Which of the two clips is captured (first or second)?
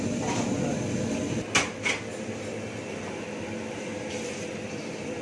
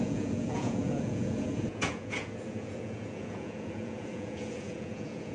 first